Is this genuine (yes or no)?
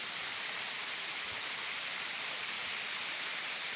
yes